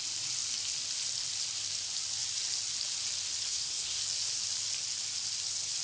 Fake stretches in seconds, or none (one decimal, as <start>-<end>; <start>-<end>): 3.5-4.0